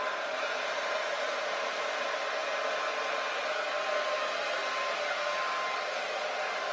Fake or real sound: real